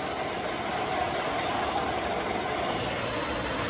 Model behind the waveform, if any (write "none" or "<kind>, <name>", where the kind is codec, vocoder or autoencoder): none